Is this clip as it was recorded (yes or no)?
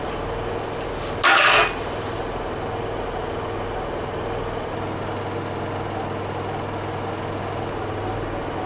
yes